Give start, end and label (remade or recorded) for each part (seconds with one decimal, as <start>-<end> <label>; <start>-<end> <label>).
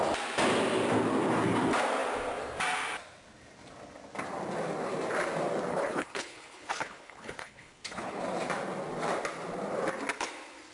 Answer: 0.0-5.7 recorded; 5.7-8.2 remade; 8.2-10.7 recorded